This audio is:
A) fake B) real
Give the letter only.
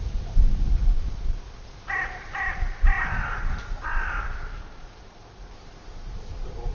B